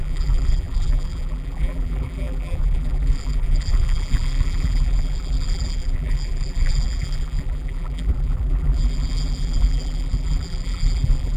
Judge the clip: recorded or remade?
remade